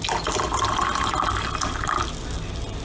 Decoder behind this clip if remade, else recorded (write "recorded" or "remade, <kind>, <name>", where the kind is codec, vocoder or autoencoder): recorded